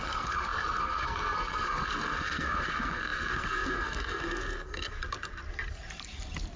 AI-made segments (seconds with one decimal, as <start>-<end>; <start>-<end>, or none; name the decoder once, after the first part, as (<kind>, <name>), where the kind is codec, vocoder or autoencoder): 0.0-5.0 (codec, SNAC)

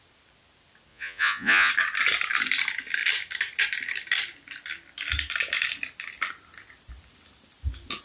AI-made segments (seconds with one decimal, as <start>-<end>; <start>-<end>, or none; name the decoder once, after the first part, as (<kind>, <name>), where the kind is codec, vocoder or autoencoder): 0.9-1.7 (vocoder, Vocos)

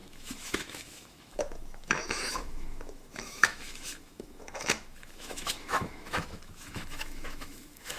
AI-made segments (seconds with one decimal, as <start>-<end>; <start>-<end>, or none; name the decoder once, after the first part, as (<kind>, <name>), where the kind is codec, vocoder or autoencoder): 0.0-8.0 (autoencoder, DAC-VAE)

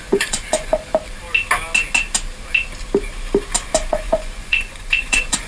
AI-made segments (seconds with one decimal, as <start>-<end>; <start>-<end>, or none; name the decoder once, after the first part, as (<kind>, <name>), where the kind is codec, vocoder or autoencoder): 0.0-0.9 (vocoder, Vocos); 3.9-5.5

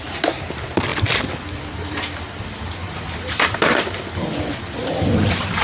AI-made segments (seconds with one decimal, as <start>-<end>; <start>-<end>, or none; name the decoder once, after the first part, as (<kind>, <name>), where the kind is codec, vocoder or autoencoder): 2.8-3.8 (vocoder, BigVGAN v2); 4.8-5.6

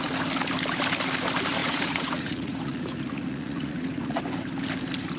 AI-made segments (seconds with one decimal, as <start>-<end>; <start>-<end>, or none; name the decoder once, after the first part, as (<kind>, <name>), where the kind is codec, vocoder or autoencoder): 1.6-4.2 (vocoder, Vocos)

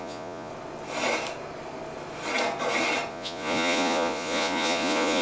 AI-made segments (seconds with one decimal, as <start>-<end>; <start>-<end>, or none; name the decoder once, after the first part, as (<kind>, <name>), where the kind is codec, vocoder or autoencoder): 0.0-0.5 (vocoder, Vocos); 3.1-5.2

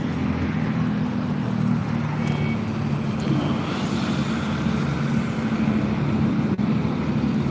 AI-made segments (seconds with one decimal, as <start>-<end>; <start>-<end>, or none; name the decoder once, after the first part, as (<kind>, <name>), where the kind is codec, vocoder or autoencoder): none